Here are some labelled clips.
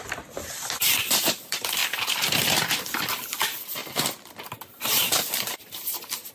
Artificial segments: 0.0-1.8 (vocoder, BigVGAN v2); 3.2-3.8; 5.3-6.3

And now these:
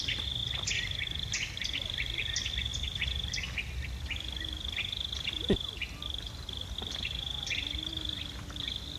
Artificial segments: none

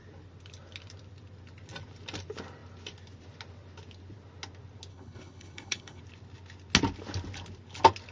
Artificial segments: 4.9-6.0 (codec, HILCodec)

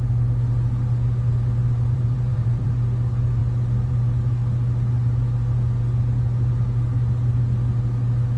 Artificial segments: 1.3-2.7 (vocoder, BigVGAN v2)

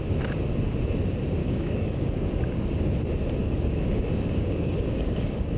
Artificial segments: 1.4-3.0 (codec, DAC); 3.4-5.6